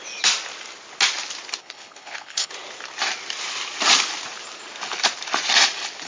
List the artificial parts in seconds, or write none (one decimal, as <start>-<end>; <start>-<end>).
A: 1.6-2.5